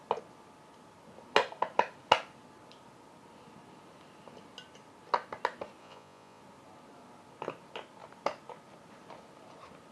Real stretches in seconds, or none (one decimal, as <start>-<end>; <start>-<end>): 0.0-5.8; 6.4-9.9